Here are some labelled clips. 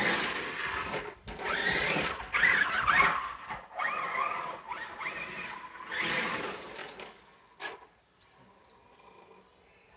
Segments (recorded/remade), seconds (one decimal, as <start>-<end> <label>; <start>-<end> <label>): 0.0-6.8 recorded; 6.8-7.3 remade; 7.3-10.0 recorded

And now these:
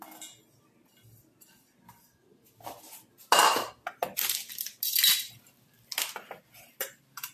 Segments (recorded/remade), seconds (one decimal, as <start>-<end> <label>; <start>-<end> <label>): 0.0-7.3 recorded

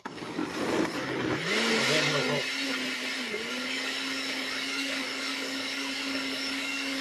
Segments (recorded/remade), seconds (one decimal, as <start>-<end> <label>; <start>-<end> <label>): 0.0-0.4 remade; 0.4-3.5 recorded; 3.5-7.0 remade

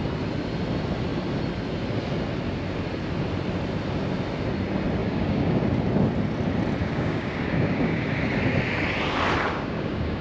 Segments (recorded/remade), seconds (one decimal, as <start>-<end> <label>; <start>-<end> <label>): 0.0-5.0 recorded; 5.0-5.6 remade; 5.6-6.8 recorded; 6.8-8.1 remade; 8.1-9.5 recorded; 9.5-10.2 remade

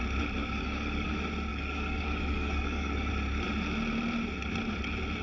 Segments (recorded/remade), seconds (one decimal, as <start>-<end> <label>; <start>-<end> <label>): 0.0-0.4 recorded; 0.4-1.1 remade; 1.1-1.5 recorded; 1.5-3.1 remade; 3.1-5.2 recorded

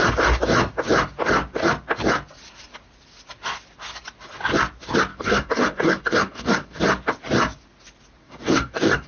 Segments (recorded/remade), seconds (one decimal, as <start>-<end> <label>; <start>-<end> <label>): 0.0-5.1 recorded; 5.1-6.8 remade; 6.8-8.2 recorded; 8.2-9.1 remade